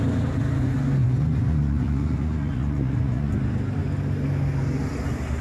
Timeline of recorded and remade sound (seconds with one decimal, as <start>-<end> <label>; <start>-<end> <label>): 0.0-1.0 recorded; 1.0-3.3 remade; 3.3-5.4 recorded